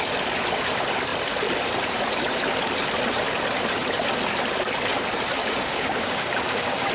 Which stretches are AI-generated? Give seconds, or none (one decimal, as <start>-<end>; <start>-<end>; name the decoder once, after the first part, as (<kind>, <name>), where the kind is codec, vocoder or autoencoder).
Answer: 5.4-6.9 (codec, DAC)

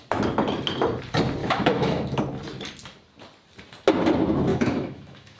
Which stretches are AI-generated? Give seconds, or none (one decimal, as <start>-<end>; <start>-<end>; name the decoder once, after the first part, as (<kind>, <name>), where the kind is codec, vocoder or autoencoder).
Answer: 1.4-2.2 (autoencoder, DAC-VAE); 4.5-5.4

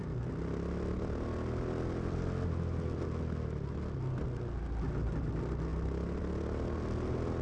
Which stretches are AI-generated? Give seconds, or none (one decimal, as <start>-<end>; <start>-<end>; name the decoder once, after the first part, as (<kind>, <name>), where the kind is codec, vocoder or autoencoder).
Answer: none

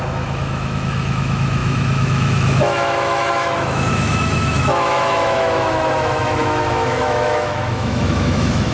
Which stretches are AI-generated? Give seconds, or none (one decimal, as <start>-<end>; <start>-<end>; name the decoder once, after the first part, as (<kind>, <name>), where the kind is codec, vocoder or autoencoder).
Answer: 0.0-8.7 (autoencoder, DAC-VAE)

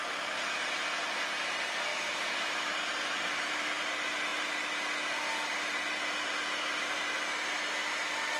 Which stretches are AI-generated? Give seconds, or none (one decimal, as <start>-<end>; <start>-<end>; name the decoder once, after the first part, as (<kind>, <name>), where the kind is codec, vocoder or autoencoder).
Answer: 1.9-2.7 (autoencoder, DAC-VAE)

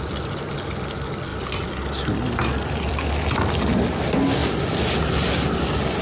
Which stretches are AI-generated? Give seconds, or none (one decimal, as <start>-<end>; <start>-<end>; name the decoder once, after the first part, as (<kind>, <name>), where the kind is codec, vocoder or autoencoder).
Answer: 1.3-3.1 (vocoder, BigVGAN v2); 4.4-5.6

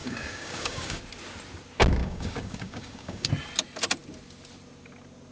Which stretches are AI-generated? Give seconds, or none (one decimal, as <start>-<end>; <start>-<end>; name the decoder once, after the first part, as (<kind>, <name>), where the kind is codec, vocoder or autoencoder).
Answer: 0.0-1.0 (codec, DAC); 2.0-3.3

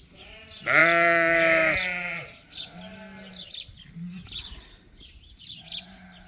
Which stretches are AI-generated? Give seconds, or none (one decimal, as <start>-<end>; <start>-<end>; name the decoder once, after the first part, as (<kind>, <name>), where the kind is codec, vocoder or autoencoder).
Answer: none